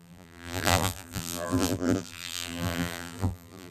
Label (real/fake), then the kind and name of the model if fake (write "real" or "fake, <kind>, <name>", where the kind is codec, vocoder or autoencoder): fake, vocoder, BigVGAN v2